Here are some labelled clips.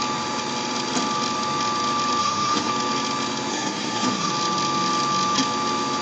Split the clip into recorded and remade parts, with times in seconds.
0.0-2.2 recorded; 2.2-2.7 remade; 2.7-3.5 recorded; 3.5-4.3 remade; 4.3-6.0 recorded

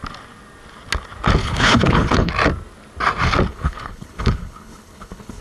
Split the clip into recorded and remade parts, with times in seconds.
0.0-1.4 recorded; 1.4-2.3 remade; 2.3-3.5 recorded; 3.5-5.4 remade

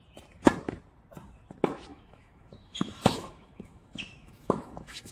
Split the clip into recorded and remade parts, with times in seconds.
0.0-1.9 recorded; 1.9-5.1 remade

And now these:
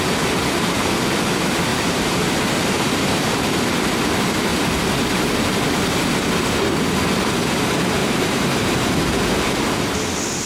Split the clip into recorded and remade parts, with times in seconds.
0.0-1.7 recorded; 1.7-3.9 remade; 3.9-8.0 recorded; 8.0-9.2 remade; 9.2-10.5 recorded

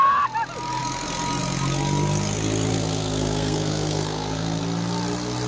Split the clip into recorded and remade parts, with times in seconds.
0.0-2.7 recorded; 2.7-4.6 remade; 4.6-5.5 recorded

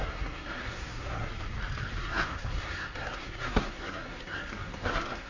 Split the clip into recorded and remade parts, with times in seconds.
0.0-1.3 remade; 1.3-2.0 recorded; 2.0-5.3 remade

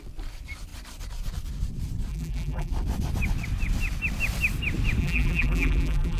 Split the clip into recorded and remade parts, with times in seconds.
0.0-2.1 recorded; 2.1-2.7 remade; 2.7-5.0 recorded; 5.0-6.2 remade

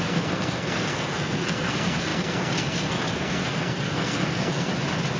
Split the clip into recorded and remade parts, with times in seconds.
0.0-4.7 remade; 4.7-5.2 recorded